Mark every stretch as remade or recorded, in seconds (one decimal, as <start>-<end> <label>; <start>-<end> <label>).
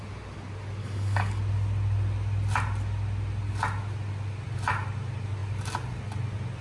0.0-0.8 recorded; 0.8-1.4 remade; 1.4-6.6 recorded